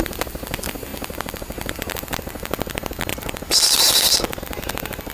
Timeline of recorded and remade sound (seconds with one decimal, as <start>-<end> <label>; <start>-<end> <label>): 0.0-3.1 recorded; 3.1-4.4 remade; 4.4-5.1 recorded